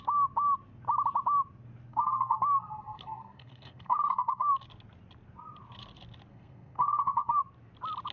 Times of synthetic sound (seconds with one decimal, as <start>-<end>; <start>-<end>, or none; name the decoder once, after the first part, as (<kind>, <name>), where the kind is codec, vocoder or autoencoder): 1.9-4.5 (codec, SNAC); 6.3-7.4